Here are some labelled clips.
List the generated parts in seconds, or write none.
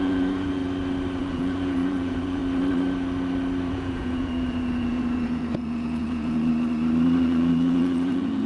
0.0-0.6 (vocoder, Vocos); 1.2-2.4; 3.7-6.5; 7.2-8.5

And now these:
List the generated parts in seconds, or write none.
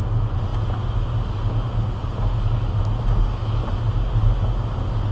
none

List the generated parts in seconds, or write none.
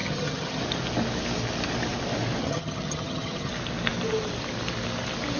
0.0-0.6 (vocoder, HiFi-GAN); 2.4-3.5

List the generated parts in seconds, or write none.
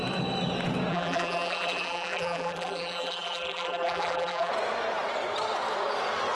0.9-4.5 (vocoder, BigVGAN v2)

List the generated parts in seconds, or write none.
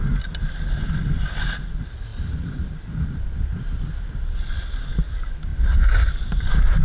none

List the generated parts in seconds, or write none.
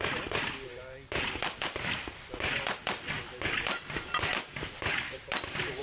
none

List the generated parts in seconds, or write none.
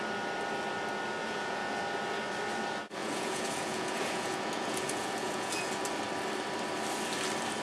1.2-1.8 (vocoder, Vocos); 3.0-5.7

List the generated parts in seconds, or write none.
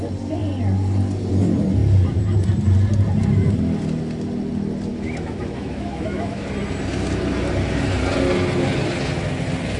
4.9-6.5 (autoencoder, DAC-VAE)